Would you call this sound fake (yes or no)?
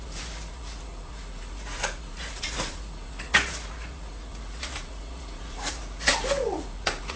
yes